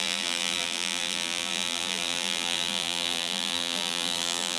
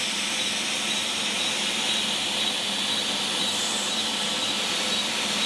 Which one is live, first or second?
second